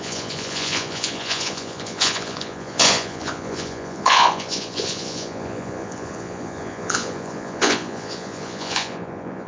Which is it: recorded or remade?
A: remade